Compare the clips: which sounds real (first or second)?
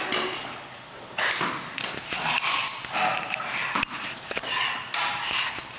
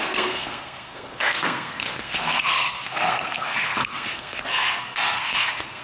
first